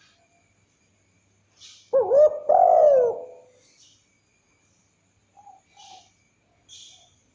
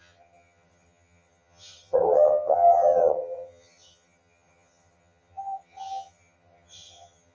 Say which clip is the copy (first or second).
second